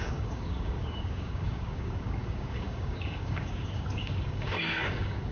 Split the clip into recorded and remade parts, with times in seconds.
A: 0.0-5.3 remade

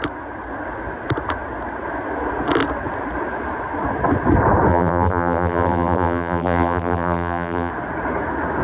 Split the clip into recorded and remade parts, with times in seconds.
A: 0.0-4.7 recorded; 4.7-7.7 remade; 7.7-8.6 recorded

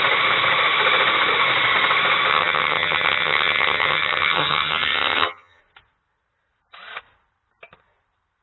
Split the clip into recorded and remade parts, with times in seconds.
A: 0.0-2.3 recorded; 2.3-5.6 remade; 5.6-8.4 recorded